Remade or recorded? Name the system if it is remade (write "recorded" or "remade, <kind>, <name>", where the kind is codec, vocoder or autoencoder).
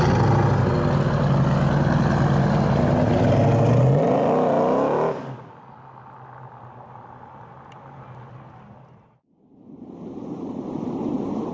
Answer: recorded